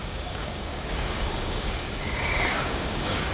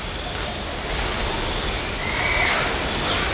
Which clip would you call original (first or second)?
second